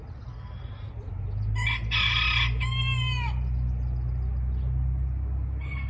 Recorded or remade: recorded